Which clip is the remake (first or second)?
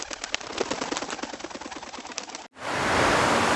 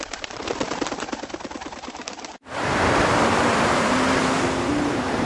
second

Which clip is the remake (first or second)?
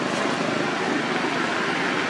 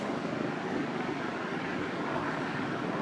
second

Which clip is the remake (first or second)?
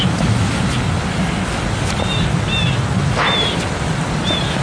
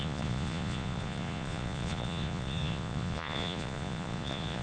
second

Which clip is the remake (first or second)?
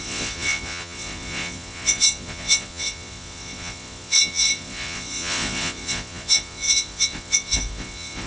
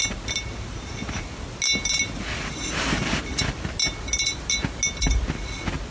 first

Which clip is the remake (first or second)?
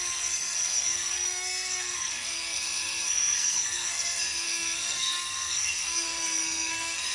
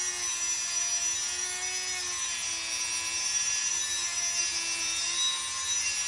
first